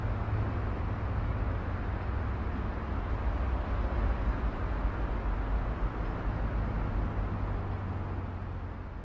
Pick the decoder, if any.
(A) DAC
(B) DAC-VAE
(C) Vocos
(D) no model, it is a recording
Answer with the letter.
D